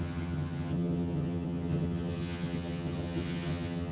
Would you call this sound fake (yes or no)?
yes